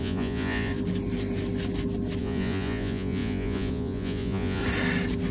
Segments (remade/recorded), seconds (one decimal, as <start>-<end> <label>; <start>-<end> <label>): 0.0-0.7 remade; 0.7-2.2 recorded; 2.2-4.6 remade; 4.6-5.3 recorded